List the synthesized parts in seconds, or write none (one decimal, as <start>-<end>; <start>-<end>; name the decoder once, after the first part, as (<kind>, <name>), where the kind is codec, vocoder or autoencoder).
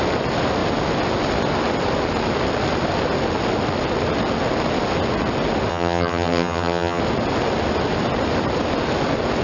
5.7-7.0 (vocoder, HiFi-GAN)